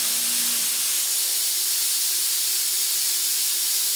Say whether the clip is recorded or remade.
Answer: recorded